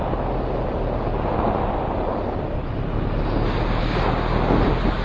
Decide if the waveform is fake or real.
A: real